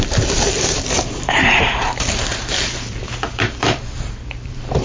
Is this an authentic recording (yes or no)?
no